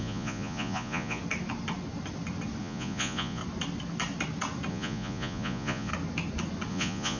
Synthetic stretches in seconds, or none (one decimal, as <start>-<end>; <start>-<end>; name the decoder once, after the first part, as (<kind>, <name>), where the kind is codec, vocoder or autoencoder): 0.0-1.2 (vocoder, Vocos); 2.6-3.4; 4.7-5.9; 6.7-7.2